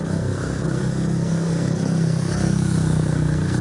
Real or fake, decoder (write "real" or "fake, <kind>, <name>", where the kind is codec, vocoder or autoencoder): fake, codec, SNAC